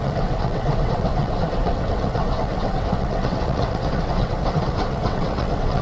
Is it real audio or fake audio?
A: fake